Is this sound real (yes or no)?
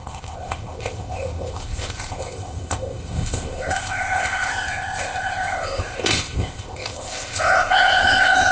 no